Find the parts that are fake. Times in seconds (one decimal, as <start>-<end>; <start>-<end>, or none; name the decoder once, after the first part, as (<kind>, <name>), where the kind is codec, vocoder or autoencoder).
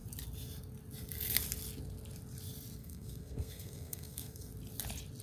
2.8-4.5 (codec, SNAC)